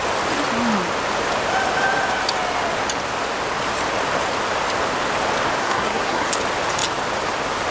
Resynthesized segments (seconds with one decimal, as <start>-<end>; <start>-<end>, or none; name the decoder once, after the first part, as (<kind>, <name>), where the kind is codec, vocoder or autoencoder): 5.6-6.3 (codec, SNAC)